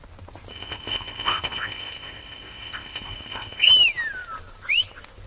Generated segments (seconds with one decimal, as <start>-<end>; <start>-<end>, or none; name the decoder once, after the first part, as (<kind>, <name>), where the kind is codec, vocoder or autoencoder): 0.5-3.7 (codec, ZipCodec)